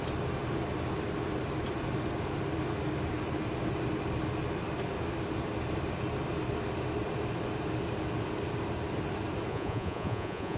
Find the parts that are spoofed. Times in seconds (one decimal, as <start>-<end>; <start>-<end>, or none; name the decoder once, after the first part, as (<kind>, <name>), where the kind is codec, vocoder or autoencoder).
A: 9.5-10.6 (vocoder, Vocos)